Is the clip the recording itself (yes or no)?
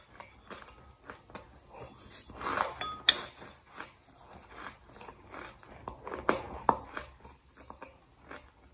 yes